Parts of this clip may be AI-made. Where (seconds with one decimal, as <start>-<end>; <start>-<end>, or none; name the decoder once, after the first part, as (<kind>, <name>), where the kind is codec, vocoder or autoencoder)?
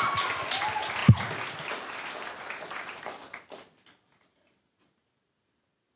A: none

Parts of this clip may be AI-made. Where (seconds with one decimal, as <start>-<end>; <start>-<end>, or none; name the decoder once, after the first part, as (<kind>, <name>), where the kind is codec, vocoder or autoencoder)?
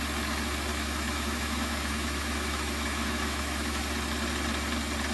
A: 0.7-3.8 (autoencoder, DAC-VAE)